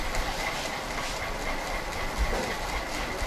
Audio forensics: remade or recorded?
recorded